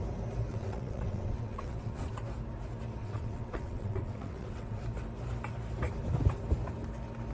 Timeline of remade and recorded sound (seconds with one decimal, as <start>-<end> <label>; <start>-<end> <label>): 0.0-0.5 recorded; 0.5-2.1 remade; 2.1-3.0 recorded; 3.0-4.8 remade; 4.8-7.3 recorded